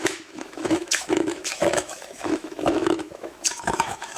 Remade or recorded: remade